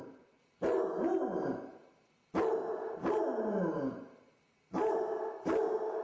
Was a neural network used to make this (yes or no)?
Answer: no